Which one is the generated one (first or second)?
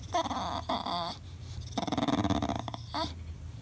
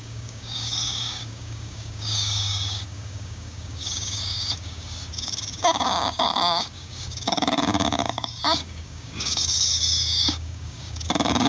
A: second